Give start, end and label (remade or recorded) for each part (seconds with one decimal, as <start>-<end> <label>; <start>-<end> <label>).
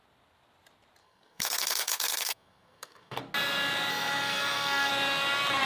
0.0-1.0 recorded; 1.0-3.2 remade; 3.2-3.9 recorded; 3.9-4.9 remade; 4.9-5.7 recorded